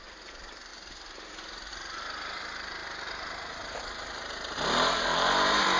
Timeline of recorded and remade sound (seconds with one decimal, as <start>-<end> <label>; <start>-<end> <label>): 0.0-5.8 remade